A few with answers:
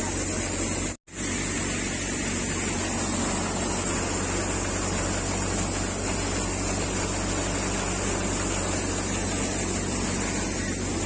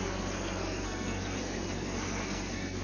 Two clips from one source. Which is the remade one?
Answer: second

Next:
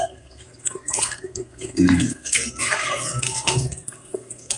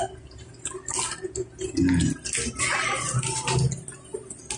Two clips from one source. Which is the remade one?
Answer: first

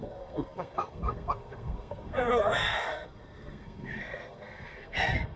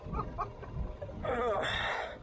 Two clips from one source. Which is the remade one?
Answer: first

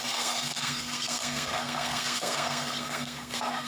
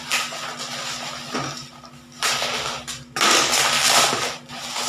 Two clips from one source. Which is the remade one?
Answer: first